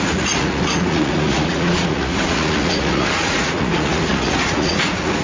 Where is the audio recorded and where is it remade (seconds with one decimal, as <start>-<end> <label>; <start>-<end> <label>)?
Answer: 0.0-5.2 remade

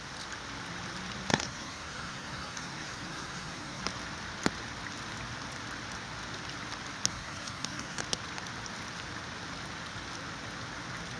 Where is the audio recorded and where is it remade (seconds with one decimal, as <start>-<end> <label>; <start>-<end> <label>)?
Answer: 0.0-1.3 recorded; 1.3-3.8 remade; 3.8-7.1 recorded; 7.1-8.0 remade; 8.0-11.2 recorded

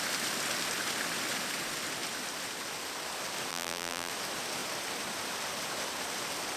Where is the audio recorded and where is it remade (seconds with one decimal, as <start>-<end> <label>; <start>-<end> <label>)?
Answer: 0.0-3.5 recorded; 3.5-4.1 remade; 4.1-6.6 recorded